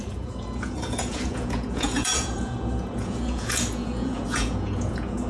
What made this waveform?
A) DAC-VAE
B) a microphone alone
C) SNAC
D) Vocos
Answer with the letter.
D